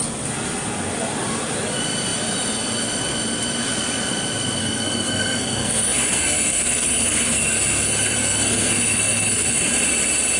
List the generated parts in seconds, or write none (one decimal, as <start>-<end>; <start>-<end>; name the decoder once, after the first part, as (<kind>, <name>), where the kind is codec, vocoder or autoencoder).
4.6-9.7 (codec, SNAC)